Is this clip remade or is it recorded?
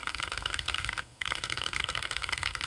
remade